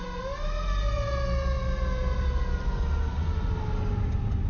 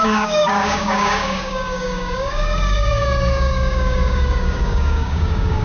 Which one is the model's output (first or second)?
second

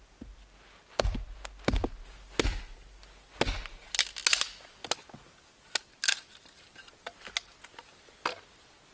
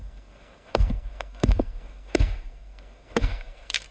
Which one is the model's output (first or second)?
second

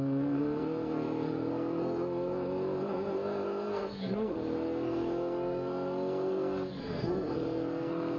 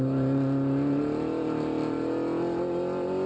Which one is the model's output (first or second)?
first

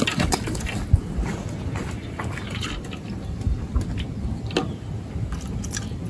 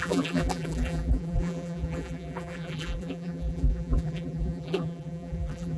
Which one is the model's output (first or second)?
second